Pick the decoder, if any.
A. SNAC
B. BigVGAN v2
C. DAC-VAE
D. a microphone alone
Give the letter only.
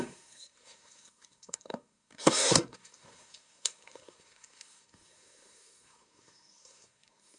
A